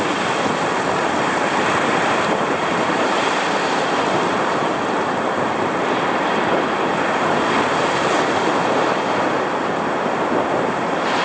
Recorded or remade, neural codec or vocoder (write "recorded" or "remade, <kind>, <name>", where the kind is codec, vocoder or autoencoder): recorded